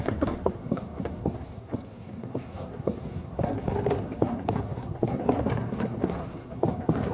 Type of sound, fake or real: fake